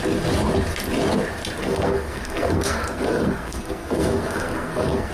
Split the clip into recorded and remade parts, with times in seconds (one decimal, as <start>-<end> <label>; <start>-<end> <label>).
0.0-1.6 recorded; 1.6-5.1 remade